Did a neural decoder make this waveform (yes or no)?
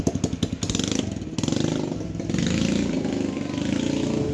no